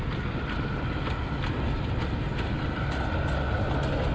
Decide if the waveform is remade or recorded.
recorded